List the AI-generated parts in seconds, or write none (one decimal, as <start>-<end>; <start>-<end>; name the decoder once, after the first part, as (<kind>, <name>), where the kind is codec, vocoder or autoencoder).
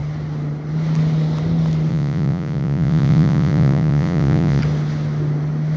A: 1.9-4.6 (vocoder, Vocos)